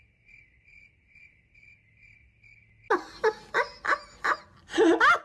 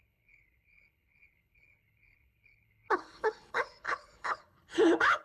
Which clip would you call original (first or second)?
first